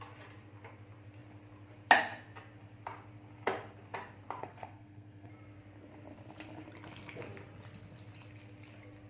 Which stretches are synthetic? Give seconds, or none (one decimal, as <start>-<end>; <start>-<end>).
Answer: 4.4-5.3